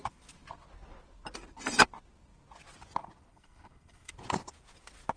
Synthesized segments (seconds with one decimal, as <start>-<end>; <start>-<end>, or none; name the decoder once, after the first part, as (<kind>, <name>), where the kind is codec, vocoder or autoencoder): 3.3-4.1 (codec, SNAC)